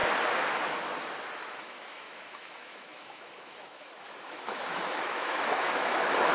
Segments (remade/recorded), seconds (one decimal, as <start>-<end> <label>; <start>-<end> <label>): 0.0-1.6 recorded; 1.6-6.3 remade